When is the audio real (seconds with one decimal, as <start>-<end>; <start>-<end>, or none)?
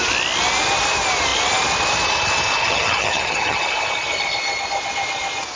0.0-2.6; 3.6-5.6